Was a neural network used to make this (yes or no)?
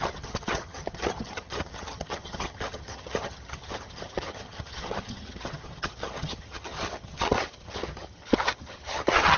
yes